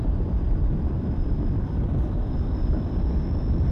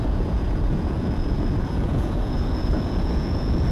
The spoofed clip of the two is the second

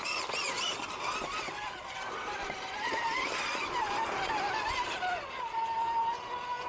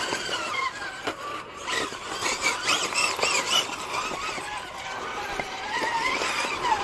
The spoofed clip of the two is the second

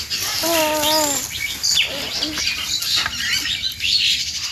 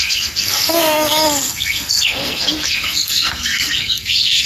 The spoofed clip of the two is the second